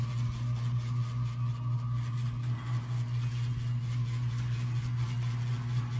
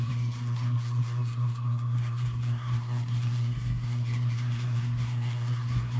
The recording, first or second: first